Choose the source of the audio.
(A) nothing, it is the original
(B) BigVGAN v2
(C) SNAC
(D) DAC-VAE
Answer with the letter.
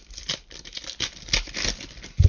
A